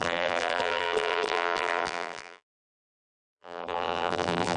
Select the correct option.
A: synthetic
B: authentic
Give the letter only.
A